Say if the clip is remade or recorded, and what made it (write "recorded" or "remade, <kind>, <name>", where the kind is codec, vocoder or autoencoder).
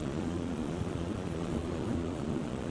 remade, vocoder, Vocos